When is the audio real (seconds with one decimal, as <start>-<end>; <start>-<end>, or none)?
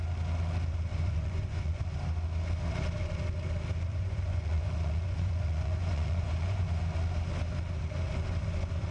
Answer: 0.0-0.9; 1.8-3.9; 6.8-8.9